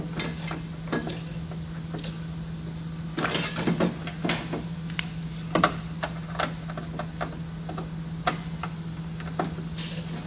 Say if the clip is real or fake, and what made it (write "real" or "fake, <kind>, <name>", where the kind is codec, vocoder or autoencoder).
real